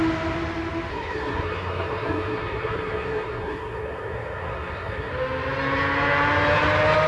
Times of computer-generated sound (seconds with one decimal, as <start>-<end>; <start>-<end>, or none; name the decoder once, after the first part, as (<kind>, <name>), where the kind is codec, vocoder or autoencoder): 0.9-5.1 (codec, SNAC)

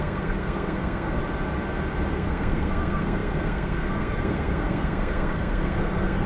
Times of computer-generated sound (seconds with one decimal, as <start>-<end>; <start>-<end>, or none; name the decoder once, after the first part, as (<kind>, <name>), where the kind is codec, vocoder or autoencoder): 0.0-1.2 (codec, SNAC); 2.1-6.3

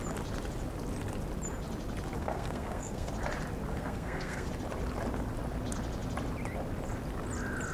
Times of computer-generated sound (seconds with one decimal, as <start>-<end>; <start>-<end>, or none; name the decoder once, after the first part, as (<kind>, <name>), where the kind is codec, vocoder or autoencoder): 2.2-3.1 (codec, SNAC); 3.7-4.5

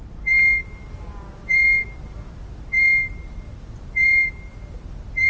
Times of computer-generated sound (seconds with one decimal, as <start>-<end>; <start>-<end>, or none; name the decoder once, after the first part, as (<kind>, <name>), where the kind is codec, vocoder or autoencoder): none

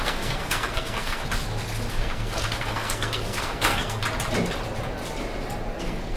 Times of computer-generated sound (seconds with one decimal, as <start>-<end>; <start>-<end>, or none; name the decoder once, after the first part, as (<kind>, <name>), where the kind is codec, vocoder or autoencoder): 0.0-1.2 (codec, SNAC); 1.9-4.0; 5.8-6.2